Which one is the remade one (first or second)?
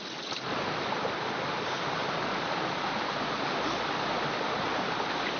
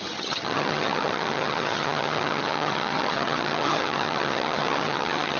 second